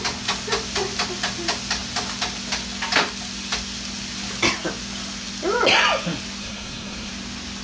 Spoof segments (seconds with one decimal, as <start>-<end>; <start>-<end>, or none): 6.4-7.1